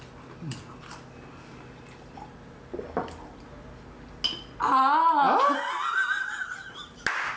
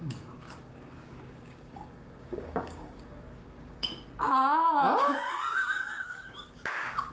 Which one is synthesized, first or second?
second